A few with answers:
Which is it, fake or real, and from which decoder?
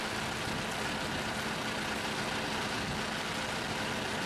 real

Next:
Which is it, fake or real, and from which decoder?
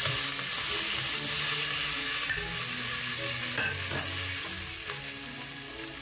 real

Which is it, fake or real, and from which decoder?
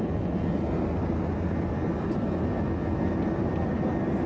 real